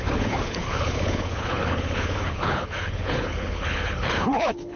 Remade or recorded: remade